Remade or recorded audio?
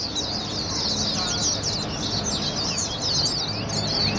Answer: recorded